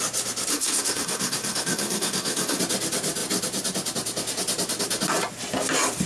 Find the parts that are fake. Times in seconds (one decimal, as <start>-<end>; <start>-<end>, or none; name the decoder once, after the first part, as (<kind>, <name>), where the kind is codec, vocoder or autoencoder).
0.5-2.6 (codec, SNAC)